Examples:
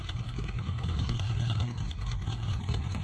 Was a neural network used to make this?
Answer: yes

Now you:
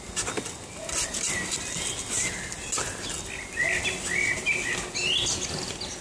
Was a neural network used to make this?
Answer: no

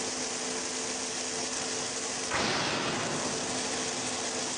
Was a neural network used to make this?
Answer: no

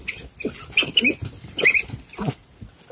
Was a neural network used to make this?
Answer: no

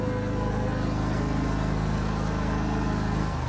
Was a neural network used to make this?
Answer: yes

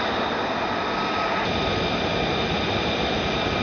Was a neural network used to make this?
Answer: no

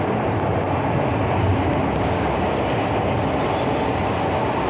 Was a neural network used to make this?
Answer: no